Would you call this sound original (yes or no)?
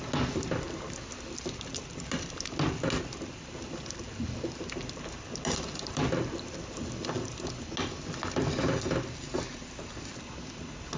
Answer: yes